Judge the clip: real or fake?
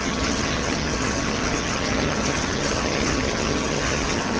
fake